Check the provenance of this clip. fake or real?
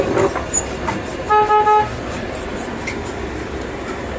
real